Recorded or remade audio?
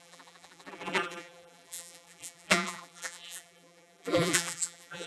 remade